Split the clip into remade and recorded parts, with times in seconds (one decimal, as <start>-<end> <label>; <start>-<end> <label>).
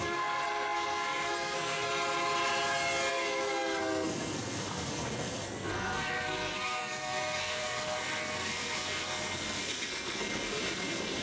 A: 0.0-1.9 remade; 1.9-3.1 recorded; 3.1-11.2 remade